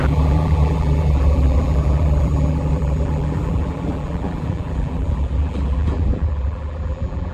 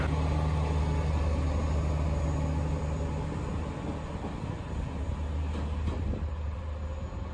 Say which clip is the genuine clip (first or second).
second